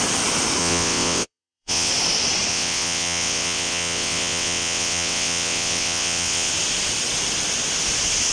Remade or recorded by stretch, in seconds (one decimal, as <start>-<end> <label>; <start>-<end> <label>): 0.0-0.6 recorded; 0.6-1.9 remade; 1.9-2.5 recorded; 2.5-6.5 remade; 6.5-8.3 recorded